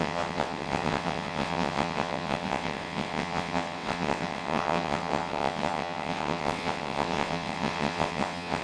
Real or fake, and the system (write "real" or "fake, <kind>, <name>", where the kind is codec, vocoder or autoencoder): fake, vocoder, WaveNeXt